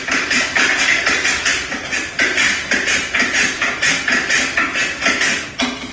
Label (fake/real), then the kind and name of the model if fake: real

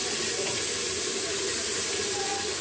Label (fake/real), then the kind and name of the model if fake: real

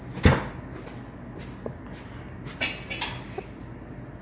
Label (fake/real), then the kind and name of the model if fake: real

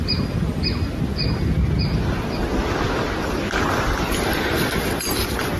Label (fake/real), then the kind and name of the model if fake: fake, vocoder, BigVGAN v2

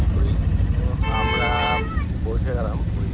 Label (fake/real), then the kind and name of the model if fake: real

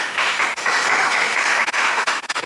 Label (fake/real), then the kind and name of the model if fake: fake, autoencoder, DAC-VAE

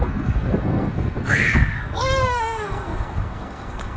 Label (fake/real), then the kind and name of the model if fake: fake, codec, SNAC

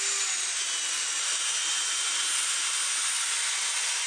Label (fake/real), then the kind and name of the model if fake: real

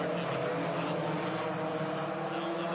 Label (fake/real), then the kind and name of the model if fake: real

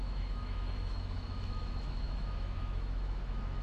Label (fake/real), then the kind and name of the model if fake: fake, autoencoder, DAC-VAE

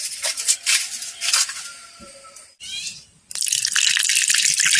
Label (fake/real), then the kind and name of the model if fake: real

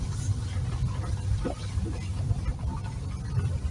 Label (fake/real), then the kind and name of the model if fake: real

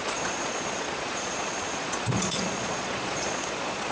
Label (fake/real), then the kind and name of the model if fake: fake, vocoder, Vocos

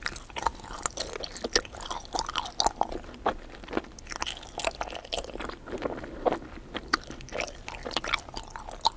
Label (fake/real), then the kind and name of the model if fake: real